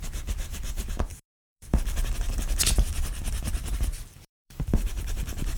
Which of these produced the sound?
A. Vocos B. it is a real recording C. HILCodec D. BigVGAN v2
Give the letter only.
D